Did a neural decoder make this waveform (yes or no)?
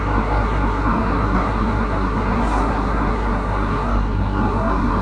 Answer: yes